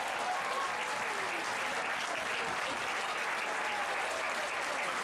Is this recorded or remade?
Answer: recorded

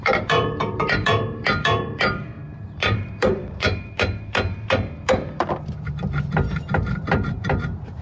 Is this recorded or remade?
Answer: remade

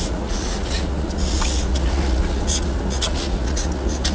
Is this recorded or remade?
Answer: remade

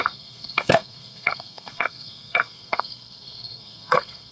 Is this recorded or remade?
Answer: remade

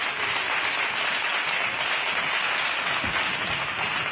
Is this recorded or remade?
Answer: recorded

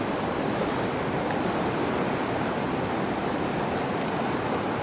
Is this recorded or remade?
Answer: recorded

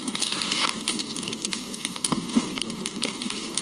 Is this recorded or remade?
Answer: remade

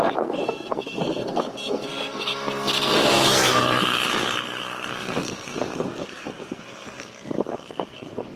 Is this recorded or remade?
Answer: remade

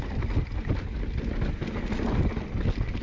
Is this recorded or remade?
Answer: recorded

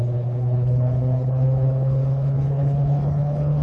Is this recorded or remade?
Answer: remade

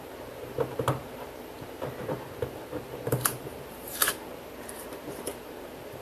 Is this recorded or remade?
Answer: remade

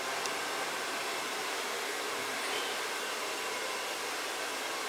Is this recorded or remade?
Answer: recorded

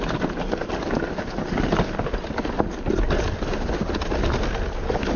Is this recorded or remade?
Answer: recorded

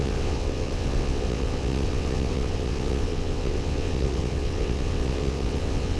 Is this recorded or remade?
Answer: remade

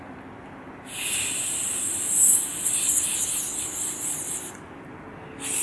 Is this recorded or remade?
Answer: recorded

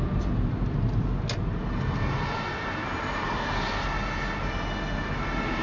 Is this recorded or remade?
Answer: recorded